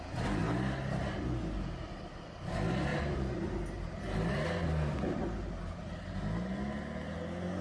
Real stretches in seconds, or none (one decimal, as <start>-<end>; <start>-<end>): 0.0-2.9; 4.3-7.6